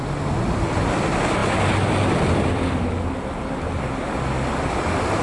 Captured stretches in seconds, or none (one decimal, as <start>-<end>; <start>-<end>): 1.4-4.5